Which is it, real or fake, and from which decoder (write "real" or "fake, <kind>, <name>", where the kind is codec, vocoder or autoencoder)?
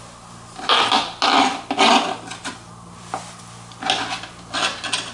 real